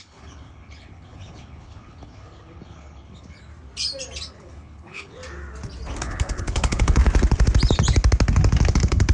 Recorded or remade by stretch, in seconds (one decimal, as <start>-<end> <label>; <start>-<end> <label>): 0.0-3.5 remade; 3.5-4.3 recorded; 4.3-5.2 remade; 5.2-6.0 recorded; 6.0-7.0 remade; 7.0-8.7 recorded; 8.7-9.1 remade

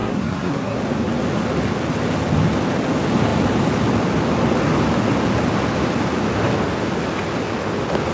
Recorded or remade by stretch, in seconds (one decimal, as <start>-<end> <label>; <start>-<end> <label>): 0.0-0.8 remade; 0.8-8.1 recorded

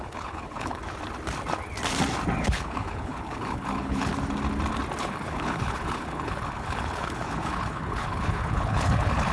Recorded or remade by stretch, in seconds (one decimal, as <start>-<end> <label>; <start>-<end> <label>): 0.0-0.8 remade; 0.8-2.4 recorded; 2.4-4.1 remade; 4.1-5.0 recorded; 5.0-9.3 remade

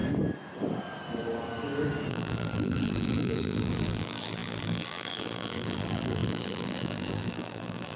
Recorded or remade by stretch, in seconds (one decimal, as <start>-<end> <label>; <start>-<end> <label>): 0.0-2.1 recorded; 2.1-8.0 remade

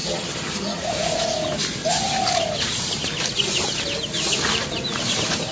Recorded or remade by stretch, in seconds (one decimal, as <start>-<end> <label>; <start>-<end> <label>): 0.0-0.8 remade; 0.8-5.5 recorded

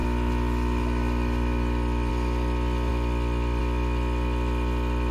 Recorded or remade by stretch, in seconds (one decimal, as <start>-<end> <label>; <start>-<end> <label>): 0.0-2.1 remade; 2.1-2.9 recorded; 2.9-3.6 remade; 3.6-5.1 recorded

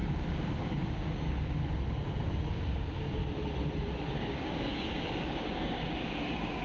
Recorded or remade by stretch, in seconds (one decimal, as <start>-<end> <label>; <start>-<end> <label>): 0.0-1.6 remade; 1.6-2.5 recorded; 2.5-3.2 remade; 3.2-4.1 recorded; 4.1-6.6 remade